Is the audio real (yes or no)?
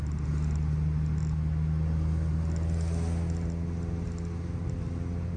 yes